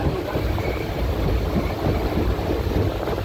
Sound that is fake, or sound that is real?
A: real